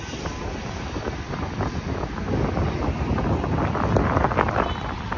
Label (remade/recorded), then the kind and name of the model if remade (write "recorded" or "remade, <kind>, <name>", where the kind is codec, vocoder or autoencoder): recorded